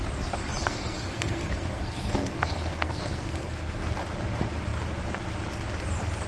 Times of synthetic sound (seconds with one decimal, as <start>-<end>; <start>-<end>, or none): 0.6-3.8